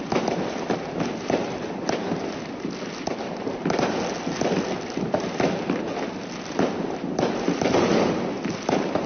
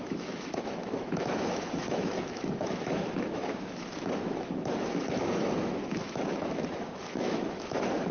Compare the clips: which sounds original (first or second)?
first